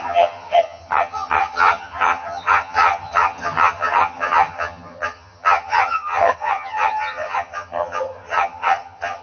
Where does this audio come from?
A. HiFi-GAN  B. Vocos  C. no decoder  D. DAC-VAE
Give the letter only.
A